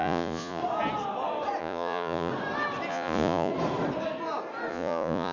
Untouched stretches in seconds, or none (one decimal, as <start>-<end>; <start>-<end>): 0.6-1.6; 2.3-2.9; 3.5-4.7